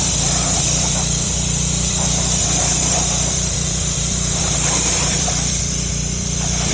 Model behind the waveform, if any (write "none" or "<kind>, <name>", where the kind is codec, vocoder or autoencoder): vocoder, BigVGAN v2